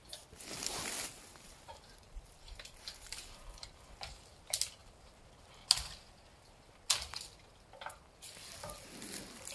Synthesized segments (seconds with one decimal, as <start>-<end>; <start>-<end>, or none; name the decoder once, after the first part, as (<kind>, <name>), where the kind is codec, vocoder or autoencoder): 1.3-4.2 (vocoder, BigVGAN v2)

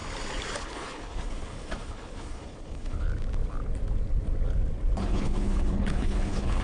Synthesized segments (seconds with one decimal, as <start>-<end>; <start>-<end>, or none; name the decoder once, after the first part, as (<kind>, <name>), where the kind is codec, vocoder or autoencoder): 0.6-3.1 (codec, HILCodec); 5.0-6.6

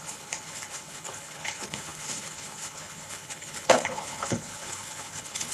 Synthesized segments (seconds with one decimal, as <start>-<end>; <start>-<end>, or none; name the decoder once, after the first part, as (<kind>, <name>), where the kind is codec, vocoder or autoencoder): 0.0-5.5 (codec, HILCodec)

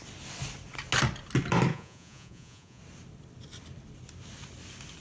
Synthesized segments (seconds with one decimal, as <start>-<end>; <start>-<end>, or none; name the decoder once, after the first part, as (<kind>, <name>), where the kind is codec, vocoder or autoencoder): 1.7-2.8 (vocoder, Vocos)

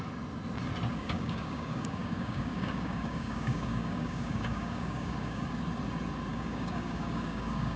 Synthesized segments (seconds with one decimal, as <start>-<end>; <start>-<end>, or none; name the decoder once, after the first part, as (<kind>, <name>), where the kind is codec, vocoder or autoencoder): 0.9-5.6 (codec, DAC); 6.3-7.8

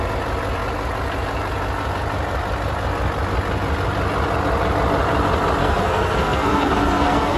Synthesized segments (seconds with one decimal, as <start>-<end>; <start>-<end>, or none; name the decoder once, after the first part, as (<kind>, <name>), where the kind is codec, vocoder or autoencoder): 5.6-7.4 (codec, SNAC)

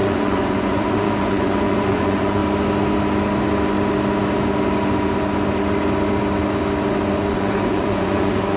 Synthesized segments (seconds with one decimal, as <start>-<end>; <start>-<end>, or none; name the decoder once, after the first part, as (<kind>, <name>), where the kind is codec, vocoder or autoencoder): 0.0-2.4 (vocoder, Vocos); 7.3-8.6

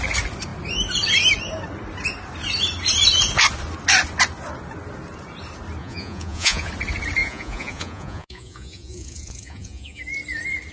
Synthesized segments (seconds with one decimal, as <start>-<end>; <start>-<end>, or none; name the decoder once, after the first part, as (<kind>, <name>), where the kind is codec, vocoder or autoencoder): 5.8-6.7 (vocoder, Vocos); 7.2-10.0